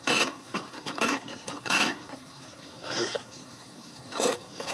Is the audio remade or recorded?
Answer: remade